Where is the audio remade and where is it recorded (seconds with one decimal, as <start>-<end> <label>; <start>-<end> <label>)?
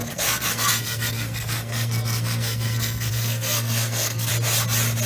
0.0-4.3 remade; 4.3-5.1 recorded